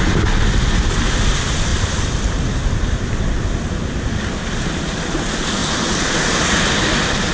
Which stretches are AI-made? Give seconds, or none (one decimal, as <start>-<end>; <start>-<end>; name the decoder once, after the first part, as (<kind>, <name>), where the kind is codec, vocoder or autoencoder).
none